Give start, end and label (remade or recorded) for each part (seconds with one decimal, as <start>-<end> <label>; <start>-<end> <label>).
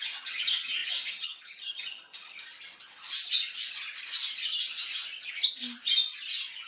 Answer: 0.0-2.4 remade; 2.4-6.7 recorded